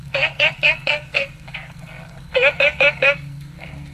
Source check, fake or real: fake